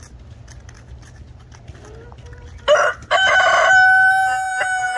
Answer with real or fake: real